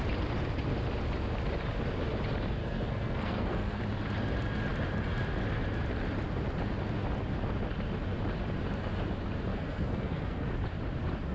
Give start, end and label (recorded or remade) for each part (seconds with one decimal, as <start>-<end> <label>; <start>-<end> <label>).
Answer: 0.0-2.6 recorded; 2.6-3.8 remade; 3.8-9.5 recorded; 9.5-10.5 remade; 10.5-11.3 recorded